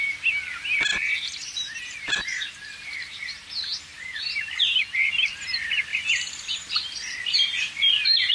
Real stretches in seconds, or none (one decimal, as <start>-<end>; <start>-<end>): 0.0-0.9; 5.1-5.9; 7.9-8.3